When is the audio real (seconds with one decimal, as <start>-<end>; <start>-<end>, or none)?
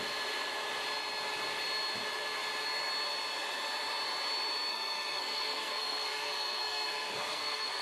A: 0.0-4.7